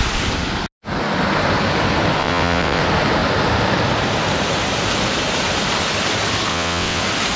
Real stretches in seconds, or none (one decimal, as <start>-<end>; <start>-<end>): 0.0-2.2; 2.8-6.5; 7.0-7.4